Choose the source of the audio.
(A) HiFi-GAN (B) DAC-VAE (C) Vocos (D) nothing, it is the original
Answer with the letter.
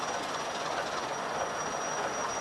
C